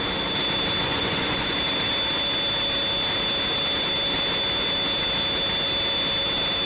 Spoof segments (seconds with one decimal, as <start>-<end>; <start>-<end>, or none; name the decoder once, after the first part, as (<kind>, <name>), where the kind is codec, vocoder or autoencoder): 0.8-1.6 (vocoder, Vocos)